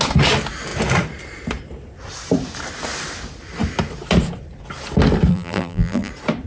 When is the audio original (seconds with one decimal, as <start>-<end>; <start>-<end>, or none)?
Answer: 0.0-5.3; 6.1-6.5

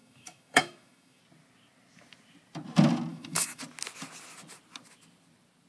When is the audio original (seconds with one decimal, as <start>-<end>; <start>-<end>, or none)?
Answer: 1.2-3.1; 3.6-5.7

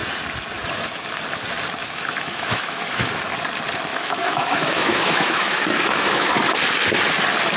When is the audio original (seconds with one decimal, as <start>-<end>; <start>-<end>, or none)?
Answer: 0.0-1.8; 3.1-3.9; 6.3-7.6